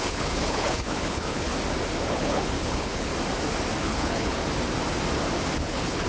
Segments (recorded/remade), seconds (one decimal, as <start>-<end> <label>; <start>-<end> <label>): 0.0-1.5 remade; 1.5-2.1 recorded; 2.1-3.1 remade; 3.1-3.8 recorded; 3.8-4.4 remade; 4.4-5.6 recorded; 5.6-6.1 remade